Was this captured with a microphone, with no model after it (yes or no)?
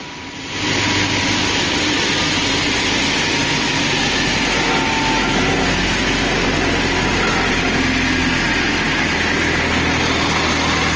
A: yes